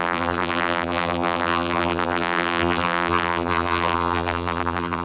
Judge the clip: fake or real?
fake